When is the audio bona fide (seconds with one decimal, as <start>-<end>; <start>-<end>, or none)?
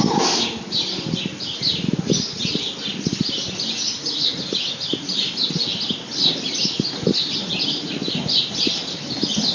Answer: 0.0-9.5